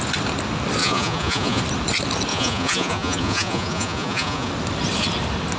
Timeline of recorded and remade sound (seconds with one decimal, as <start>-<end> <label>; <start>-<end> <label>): 0.0-0.8 recorded; 0.8-1.6 remade; 1.6-2.3 recorded; 2.3-4.5 remade; 4.5-5.6 recorded